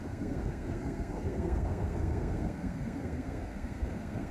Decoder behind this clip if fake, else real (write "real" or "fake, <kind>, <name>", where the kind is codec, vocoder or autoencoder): fake, codec, SNAC